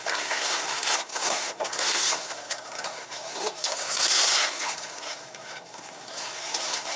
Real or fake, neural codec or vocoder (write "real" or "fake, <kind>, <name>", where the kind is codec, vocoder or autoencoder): fake, codec, SNAC